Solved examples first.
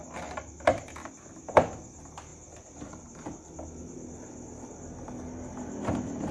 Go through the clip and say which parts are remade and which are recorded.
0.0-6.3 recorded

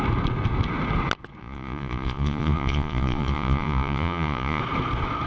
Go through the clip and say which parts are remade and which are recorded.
0.0-1.4 recorded; 1.4-4.6 remade; 4.6-5.3 recorded

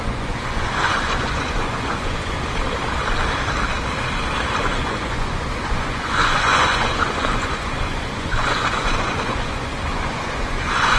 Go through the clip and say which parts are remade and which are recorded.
0.0-2.4 remade; 2.4-4.6 recorded; 4.6-11.0 remade